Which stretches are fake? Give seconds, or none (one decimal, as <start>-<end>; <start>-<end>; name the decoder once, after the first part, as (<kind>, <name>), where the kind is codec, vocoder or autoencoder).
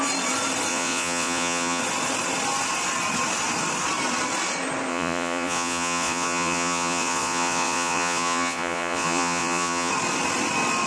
0.7-1.8 (vocoder, Vocos); 4.9-9.9